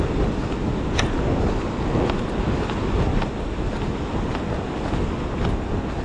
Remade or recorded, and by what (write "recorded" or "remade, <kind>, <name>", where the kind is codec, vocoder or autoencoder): recorded